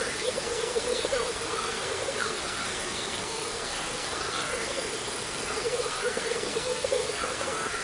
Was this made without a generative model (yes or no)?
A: no